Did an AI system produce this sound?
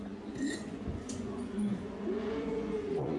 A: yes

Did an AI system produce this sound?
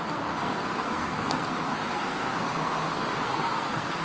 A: yes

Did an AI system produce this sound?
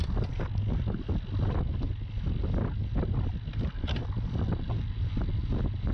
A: no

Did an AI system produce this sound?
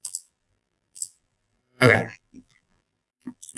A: yes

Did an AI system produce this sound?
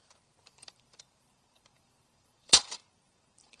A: yes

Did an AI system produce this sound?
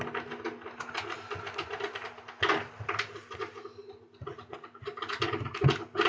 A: no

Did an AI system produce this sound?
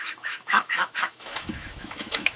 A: yes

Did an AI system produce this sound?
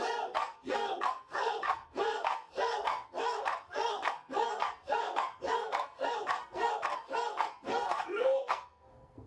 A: yes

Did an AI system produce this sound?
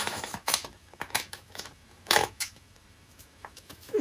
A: yes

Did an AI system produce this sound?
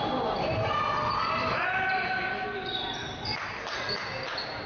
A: no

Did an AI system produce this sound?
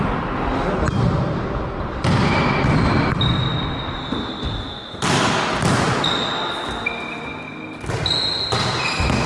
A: no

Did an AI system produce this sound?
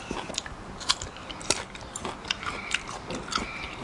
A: no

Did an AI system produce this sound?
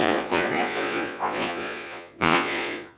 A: yes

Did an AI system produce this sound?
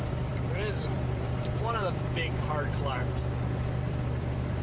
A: yes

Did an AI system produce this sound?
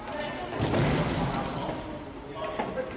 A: no